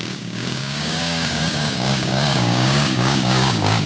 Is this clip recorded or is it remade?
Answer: remade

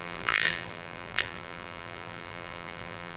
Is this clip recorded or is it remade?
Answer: remade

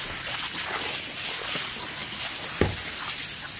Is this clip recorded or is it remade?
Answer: recorded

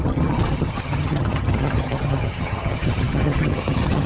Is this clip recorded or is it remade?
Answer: remade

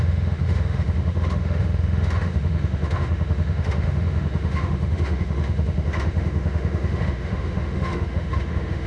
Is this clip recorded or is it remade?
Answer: remade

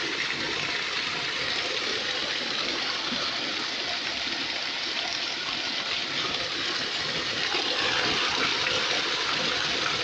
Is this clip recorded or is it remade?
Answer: recorded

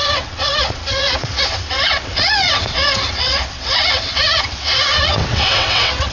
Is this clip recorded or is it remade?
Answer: remade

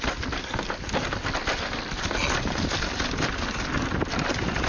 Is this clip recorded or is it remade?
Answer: recorded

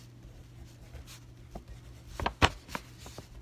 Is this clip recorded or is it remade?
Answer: recorded